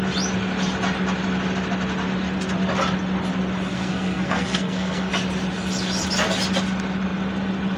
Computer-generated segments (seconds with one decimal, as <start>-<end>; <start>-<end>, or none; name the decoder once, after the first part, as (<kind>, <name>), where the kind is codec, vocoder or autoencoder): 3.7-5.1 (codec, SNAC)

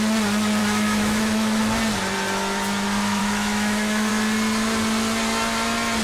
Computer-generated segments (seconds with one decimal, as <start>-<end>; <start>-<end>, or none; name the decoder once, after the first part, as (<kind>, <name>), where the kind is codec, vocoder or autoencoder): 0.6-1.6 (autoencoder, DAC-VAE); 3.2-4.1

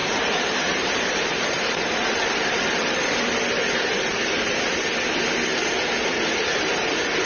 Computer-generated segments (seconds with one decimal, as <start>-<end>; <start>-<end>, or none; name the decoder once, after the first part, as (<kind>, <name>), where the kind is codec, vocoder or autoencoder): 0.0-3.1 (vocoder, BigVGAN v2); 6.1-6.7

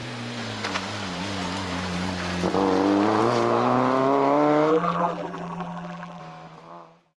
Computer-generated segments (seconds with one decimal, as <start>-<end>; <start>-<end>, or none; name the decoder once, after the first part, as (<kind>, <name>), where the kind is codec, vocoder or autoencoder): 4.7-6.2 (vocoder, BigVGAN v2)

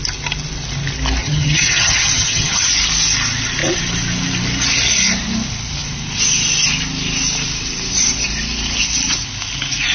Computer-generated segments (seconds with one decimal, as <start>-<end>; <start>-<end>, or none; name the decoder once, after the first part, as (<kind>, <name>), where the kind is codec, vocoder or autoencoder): 1.2-2.7 (vocoder, HiFi-GAN)

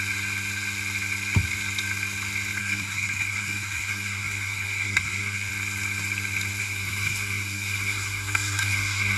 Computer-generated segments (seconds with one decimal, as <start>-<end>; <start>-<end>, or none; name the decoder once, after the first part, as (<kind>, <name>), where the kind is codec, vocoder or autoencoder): 2.6-5.5 (codec, SNAC); 6.6-9.2